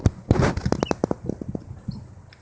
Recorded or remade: recorded